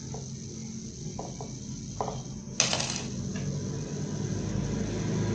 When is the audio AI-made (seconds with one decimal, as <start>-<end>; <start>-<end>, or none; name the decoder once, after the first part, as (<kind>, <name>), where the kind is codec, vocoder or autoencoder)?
none